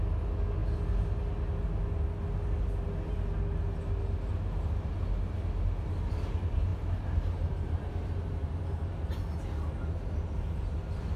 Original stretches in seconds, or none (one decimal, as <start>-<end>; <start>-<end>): 0.0-11.2